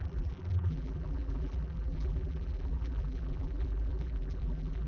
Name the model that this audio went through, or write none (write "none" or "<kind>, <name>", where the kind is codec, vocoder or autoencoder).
vocoder, BigVGAN v2